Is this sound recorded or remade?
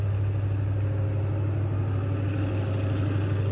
recorded